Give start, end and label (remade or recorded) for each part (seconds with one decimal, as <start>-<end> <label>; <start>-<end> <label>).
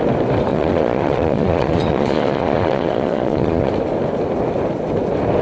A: 0.0-0.5 recorded; 0.5-3.7 remade; 3.7-5.4 recorded